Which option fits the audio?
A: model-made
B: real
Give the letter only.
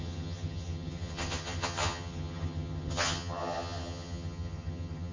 A